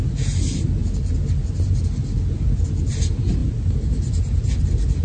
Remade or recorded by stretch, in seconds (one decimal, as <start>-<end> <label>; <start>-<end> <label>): 0.0-5.0 recorded